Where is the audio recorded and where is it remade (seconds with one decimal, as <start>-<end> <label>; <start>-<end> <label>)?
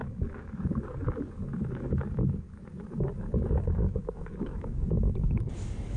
0.0-6.0 remade